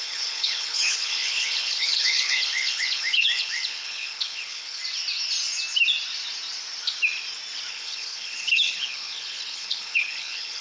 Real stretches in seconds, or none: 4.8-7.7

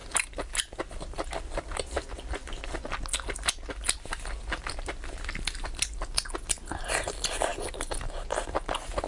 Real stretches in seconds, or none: 0.0-9.1

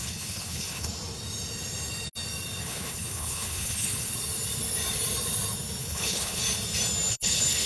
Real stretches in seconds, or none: 0.9-2.6; 4.1-5.8; 6.4-7.1

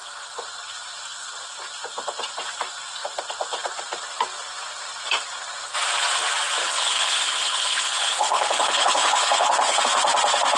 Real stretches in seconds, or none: 0.0-6.6; 9.8-10.6

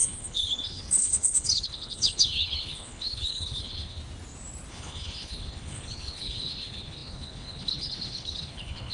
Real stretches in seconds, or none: 4.0-4.7

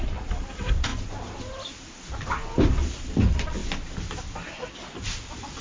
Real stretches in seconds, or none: 0.0-5.6

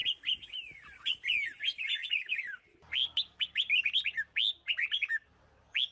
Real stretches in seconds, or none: 0.0-5.9